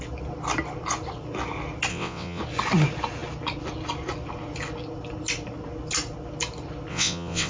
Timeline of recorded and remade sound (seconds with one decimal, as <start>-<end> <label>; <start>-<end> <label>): 0.0-1.9 recorded; 1.9-2.4 remade; 2.4-6.9 recorded; 6.9-7.5 remade